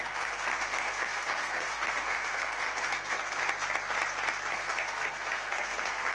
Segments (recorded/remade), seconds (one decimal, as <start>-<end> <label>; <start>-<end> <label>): 0.0-3.4 remade; 3.4-4.5 recorded; 4.5-6.1 remade